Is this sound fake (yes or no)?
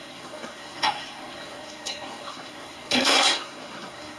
yes